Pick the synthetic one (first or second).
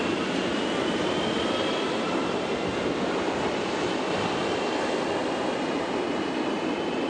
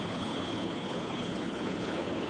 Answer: second